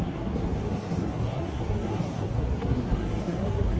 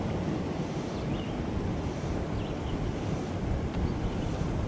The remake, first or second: first